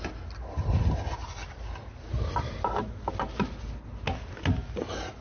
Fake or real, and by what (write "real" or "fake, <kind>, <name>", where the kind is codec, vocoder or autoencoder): real